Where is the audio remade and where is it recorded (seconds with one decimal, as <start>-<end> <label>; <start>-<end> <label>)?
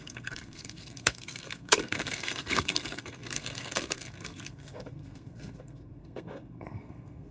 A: 0.0-7.3 remade